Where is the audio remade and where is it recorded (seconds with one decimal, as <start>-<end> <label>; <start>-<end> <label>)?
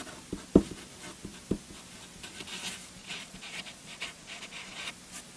0.0-3.0 recorded; 3.0-4.9 remade; 4.9-5.4 recorded